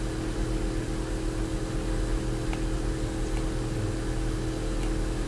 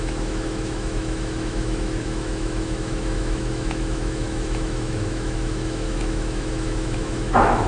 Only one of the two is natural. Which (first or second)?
first